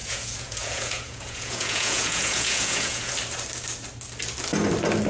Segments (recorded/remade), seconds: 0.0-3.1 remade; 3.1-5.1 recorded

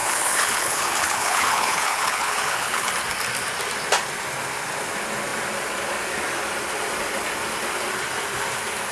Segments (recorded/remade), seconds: 0.0-2.9 remade; 2.9-8.9 recorded

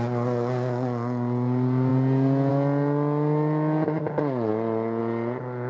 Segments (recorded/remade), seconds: 0.0-5.7 recorded

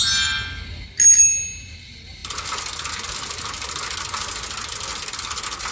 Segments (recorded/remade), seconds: 0.0-5.7 recorded